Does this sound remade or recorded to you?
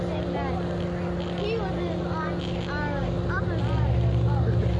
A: recorded